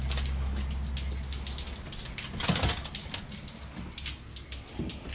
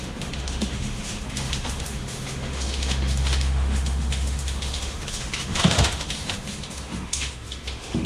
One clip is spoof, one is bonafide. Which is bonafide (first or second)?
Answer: first